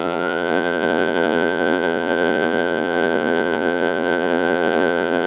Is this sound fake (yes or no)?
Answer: yes